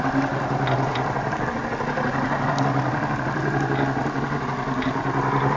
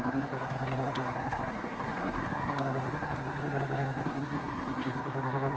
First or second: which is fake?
second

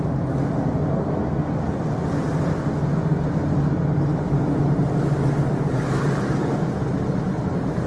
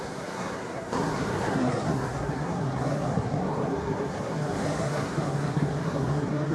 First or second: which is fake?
second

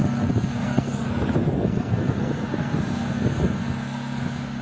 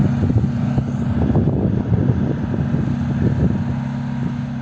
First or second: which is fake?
first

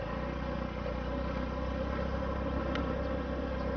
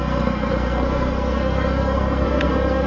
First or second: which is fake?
second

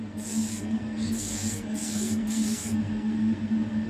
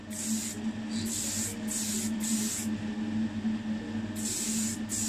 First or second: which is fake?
first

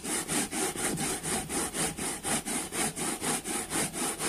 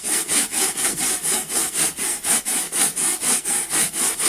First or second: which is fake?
second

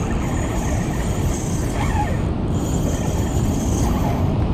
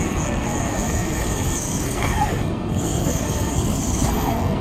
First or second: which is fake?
second